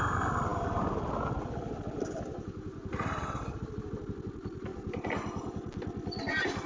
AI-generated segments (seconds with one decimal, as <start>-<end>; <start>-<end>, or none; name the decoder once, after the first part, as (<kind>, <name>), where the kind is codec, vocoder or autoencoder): none